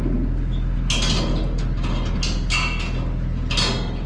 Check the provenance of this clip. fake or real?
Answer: real